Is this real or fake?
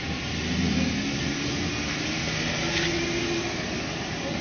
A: real